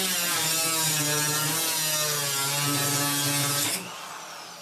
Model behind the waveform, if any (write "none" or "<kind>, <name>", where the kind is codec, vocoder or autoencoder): none